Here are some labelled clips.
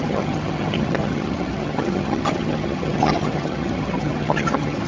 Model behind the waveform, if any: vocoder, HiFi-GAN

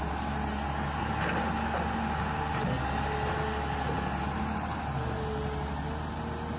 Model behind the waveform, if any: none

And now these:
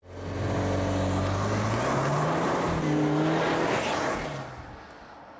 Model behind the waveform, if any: none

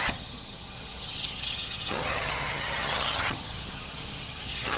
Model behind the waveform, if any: vocoder, HiFi-GAN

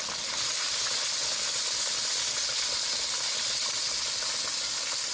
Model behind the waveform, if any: none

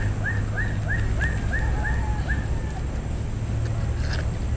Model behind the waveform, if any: none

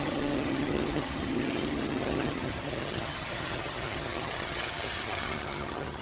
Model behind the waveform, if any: vocoder, HiFi-GAN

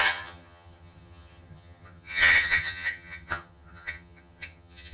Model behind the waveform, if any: vocoder, HiFi-GAN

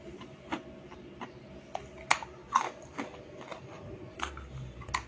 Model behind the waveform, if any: none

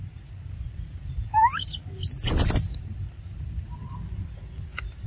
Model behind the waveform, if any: none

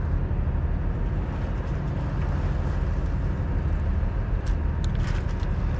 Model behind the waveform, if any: none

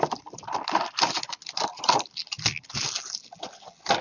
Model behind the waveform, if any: none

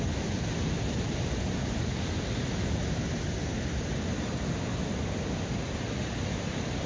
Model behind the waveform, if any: none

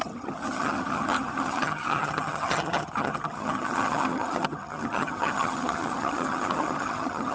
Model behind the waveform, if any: vocoder, HiFi-GAN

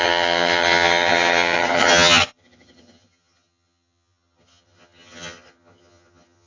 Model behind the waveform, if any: vocoder, HiFi-GAN